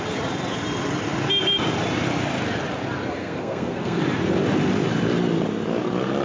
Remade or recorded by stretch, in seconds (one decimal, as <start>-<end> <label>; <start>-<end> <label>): 0.0-3.2 recorded; 3.2-4.0 remade; 4.0-6.2 recorded